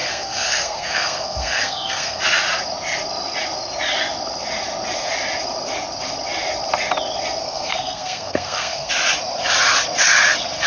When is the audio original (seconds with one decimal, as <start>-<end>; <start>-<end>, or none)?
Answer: 2.2-7.4; 8.9-10.7